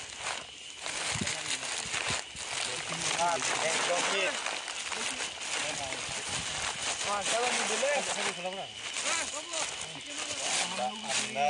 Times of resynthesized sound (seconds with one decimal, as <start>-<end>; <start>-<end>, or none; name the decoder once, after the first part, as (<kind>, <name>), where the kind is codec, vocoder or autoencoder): none